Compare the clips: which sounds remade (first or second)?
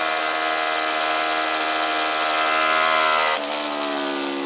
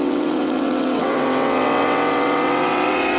second